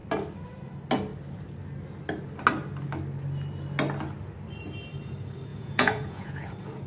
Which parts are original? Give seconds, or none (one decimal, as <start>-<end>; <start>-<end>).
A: 0.0-5.5; 6.5-6.9

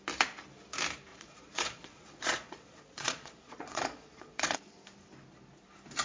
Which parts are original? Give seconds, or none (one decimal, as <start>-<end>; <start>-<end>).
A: 0.0-1.1; 4.7-6.0